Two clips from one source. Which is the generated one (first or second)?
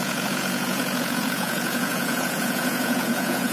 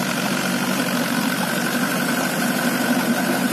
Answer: first